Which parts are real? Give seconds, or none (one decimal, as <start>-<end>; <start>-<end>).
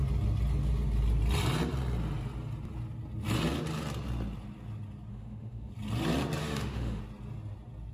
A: 0.0-5.1; 5.7-6.4; 7.0-7.9